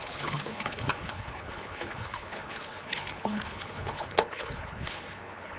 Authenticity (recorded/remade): remade